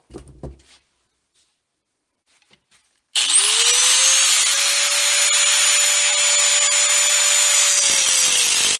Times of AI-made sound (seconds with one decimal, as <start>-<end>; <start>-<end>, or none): none

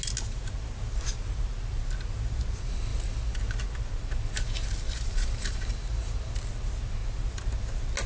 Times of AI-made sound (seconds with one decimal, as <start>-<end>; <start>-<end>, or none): none

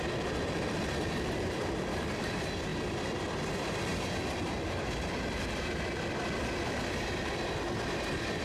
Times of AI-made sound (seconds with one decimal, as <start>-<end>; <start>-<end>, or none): 0.0-2.7; 3.5-8.4

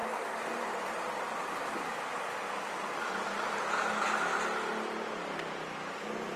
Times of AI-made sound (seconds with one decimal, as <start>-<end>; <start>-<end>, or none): none

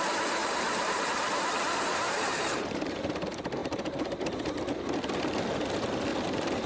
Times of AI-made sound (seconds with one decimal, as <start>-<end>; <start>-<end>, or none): 0.4-1.0; 1.9-3.0; 3.6-5.2; 6.1-6.7

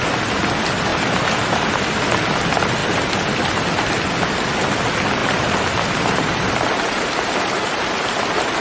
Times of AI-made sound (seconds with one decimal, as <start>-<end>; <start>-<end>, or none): 0.9-1.7; 5.2-8.0

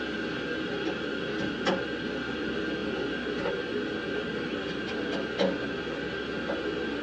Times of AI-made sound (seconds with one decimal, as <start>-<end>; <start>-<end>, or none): none

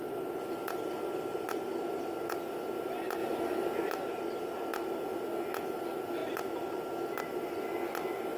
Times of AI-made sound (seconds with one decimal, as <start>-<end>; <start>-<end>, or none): none